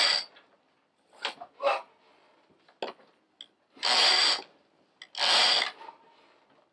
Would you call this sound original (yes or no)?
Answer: yes